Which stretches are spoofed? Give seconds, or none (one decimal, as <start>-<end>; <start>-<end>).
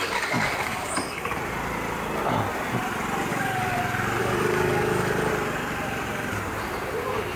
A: 0.0-1.4; 3.3-3.8; 4.2-5.3